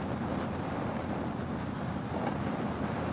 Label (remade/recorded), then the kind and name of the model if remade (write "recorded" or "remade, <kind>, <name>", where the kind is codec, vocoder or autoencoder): recorded